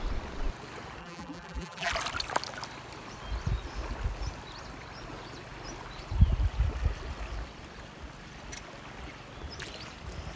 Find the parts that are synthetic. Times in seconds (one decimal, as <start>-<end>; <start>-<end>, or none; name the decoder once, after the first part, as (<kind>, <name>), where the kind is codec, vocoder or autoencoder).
1.0-1.9 (vocoder, BigVGAN v2)